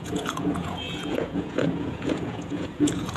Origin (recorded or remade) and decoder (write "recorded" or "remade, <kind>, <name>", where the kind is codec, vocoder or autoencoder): remade, vocoder, Vocos